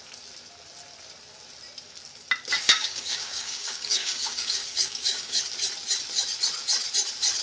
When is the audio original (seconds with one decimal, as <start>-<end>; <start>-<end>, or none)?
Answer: 0.0-2.6; 5.4-7.4